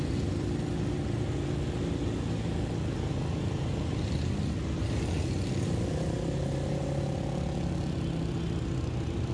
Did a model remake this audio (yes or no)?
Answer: no